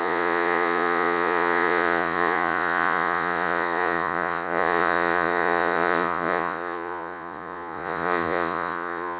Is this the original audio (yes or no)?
no